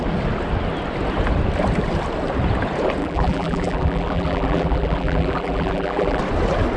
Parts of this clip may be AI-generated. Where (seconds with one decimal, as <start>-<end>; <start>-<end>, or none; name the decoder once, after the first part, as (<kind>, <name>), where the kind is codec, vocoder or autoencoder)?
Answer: 3.0-6.2 (vocoder, BigVGAN v2)

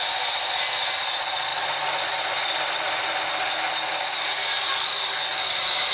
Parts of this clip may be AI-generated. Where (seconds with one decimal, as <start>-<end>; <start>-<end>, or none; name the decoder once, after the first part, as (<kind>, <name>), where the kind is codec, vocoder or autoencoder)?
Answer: none

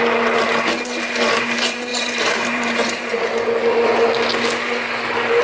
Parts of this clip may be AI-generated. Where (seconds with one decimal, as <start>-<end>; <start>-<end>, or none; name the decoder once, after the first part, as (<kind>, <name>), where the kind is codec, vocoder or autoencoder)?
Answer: 1.9-2.7 (vocoder, BigVGAN v2)

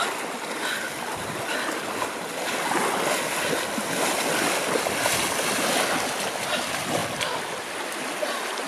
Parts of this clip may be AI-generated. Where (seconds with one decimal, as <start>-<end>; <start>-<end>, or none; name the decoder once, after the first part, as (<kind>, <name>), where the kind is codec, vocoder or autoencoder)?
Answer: none

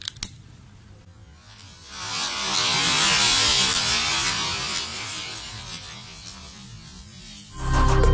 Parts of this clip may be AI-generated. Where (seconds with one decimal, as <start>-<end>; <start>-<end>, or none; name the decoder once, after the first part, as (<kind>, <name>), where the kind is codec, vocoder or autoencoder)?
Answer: 4.9-5.5 (vocoder, BigVGAN v2)

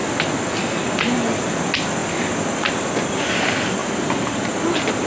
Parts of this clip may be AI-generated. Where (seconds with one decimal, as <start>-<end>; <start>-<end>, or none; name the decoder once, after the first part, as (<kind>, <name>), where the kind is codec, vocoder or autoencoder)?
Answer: 0.0-1.6 (vocoder, BigVGAN v2); 3.8-4.4